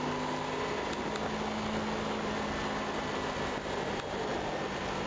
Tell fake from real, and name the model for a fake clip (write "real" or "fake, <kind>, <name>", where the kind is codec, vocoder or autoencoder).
real